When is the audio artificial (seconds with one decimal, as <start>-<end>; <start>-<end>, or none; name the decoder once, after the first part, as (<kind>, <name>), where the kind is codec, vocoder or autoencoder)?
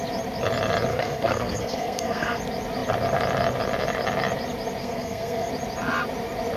0.9-2.4 (codec, SNAC); 4.8-5.5